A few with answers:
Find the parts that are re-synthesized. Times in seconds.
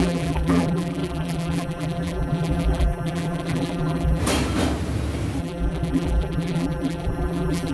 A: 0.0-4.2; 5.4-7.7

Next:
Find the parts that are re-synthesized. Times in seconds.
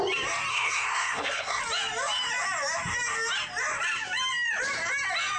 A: 0.5-1.6